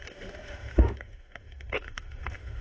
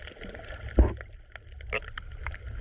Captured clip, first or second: second